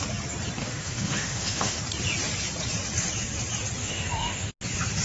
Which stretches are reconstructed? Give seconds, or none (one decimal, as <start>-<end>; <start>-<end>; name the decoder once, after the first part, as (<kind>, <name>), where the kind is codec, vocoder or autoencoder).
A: 0.6-1.8 (autoencoder, DAC-VAE); 3.8-4.5